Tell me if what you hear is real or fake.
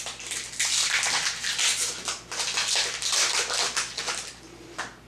real